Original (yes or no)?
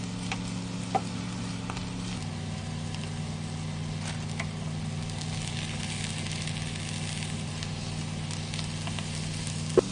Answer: yes